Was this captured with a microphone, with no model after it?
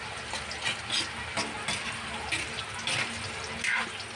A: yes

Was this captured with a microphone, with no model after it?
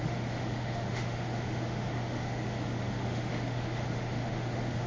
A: no